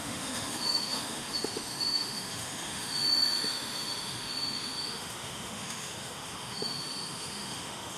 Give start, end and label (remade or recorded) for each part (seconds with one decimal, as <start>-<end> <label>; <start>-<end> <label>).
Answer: 0.0-8.0 remade